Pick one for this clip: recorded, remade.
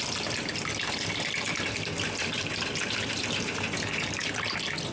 remade